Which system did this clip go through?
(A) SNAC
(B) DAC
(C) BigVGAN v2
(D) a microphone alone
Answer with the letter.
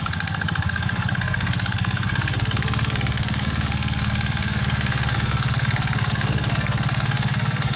A